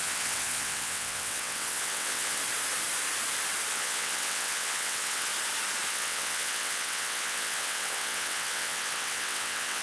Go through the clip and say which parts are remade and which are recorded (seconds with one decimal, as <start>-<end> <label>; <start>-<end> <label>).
0.0-2.4 remade; 2.4-3.7 recorded; 3.7-5.3 remade; 5.3-5.9 recorded; 5.9-9.8 remade